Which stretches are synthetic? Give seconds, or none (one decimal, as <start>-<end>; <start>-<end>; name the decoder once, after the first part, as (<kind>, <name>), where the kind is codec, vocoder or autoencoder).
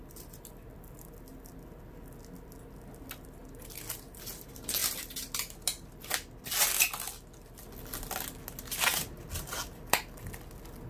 none